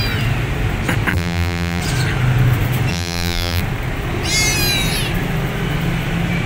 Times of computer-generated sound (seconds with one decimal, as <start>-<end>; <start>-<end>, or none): 1.1-1.8; 2.9-3.6